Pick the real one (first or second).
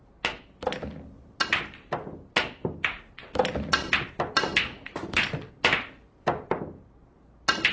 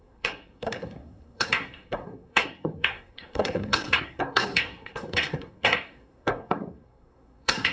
first